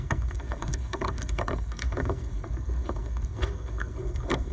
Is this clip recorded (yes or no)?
no